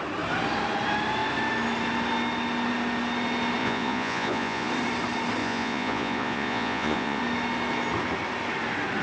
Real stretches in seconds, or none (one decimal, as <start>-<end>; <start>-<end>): 0.0-3.6; 4.7-5.4; 7.2-9.0